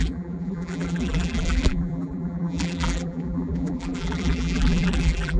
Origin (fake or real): fake